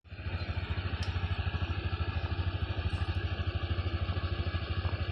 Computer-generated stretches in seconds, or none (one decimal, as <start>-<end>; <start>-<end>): none